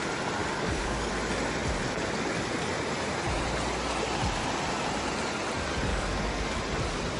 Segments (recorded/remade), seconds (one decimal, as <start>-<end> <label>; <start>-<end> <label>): 0.0-0.4 recorded; 0.4-1.1 remade; 1.1-5.9 recorded; 5.9-6.6 remade; 6.6-7.2 recorded